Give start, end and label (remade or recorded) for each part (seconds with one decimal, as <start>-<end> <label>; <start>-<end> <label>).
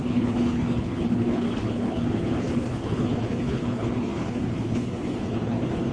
0.0-5.9 remade